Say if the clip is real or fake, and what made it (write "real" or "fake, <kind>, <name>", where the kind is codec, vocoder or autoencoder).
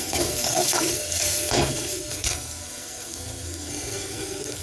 fake, codec, SNAC